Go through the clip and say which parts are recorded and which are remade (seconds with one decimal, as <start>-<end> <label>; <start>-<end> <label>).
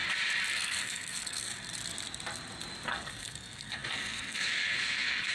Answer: 0.0-0.5 recorded; 0.5-1.5 remade; 1.5-2.9 recorded; 2.9-5.3 remade